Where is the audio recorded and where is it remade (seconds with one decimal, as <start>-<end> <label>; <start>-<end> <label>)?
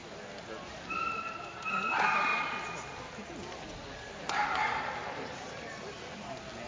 0.0-6.7 recorded